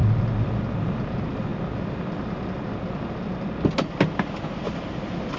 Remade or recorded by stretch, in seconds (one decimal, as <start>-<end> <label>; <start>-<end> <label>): 0.0-5.4 recorded